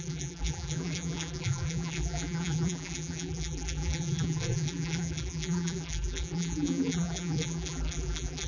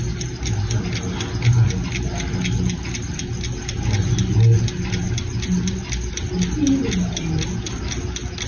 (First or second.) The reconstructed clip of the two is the first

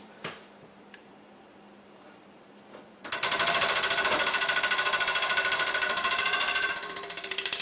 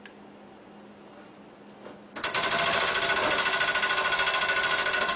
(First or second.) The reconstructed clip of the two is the first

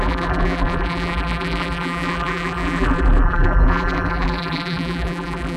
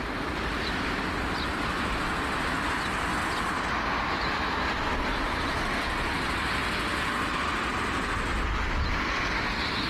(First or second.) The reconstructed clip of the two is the first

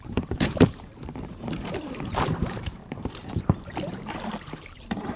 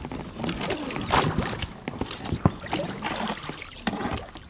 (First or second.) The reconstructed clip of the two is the first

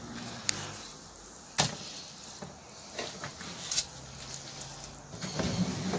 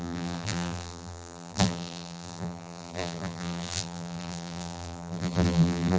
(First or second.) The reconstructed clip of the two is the second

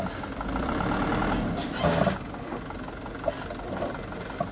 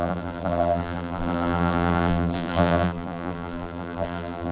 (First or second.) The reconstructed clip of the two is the second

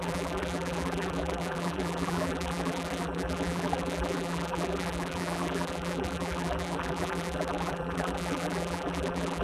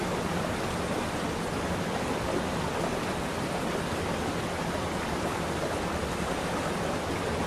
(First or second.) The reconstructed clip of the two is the first